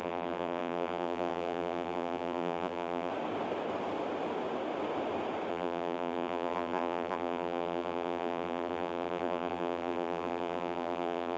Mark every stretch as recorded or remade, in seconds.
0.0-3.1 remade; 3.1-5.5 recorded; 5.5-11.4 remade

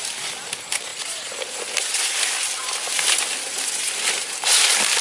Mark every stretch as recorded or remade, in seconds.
0.0-5.0 recorded

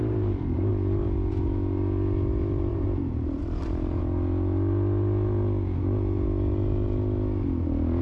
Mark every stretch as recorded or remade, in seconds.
0.0-0.7 remade; 0.7-2.7 recorded; 2.7-4.0 remade; 4.0-8.0 recorded

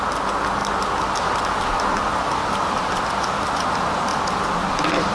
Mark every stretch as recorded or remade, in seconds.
0.0-2.4 recorded; 2.4-3.0 remade; 3.0-5.1 recorded

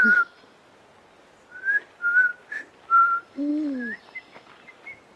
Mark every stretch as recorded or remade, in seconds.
0.0-2.3 recorded; 2.3-3.5 remade; 3.5-5.2 recorded

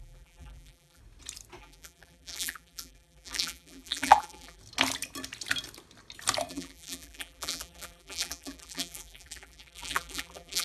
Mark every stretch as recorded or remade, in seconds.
0.0-1.0 remade; 1.0-1.6 recorded; 1.6-4.6 remade; 4.6-6.5 recorded; 6.5-10.6 remade

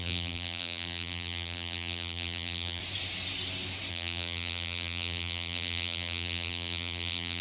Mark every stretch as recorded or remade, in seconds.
0.0-2.8 remade; 2.8-3.9 recorded; 3.9-7.4 remade

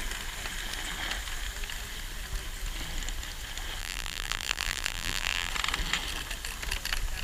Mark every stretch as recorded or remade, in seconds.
0.0-3.8 recorded; 3.8-5.5 remade; 5.5-7.2 recorded